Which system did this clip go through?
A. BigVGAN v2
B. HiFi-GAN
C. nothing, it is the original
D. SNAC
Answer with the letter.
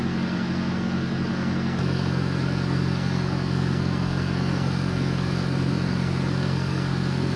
D